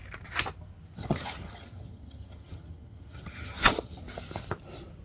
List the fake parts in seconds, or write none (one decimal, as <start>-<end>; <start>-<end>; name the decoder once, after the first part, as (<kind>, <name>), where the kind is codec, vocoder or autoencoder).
1.0-4.0 (vocoder, HiFi-GAN)